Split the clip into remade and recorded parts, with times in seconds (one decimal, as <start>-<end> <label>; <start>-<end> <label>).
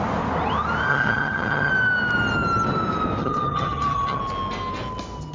0.0-0.9 recorded; 0.9-1.7 remade; 1.7-3.2 recorded; 3.2-4.2 remade; 4.2-5.3 recorded